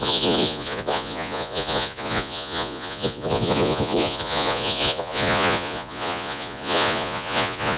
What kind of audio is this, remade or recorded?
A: remade